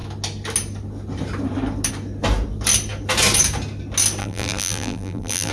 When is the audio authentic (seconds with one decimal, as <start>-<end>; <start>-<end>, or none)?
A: 0.0-4.2